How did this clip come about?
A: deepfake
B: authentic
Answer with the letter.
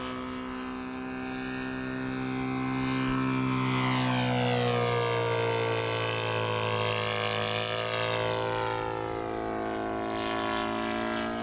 B